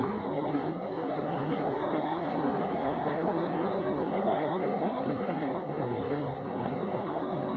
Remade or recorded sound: remade